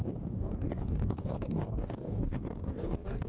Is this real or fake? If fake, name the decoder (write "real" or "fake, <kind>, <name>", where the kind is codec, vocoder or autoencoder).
fake, codec, DAC